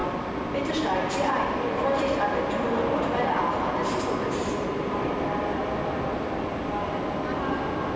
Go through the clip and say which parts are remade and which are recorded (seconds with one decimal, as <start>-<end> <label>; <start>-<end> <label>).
0.0-8.0 recorded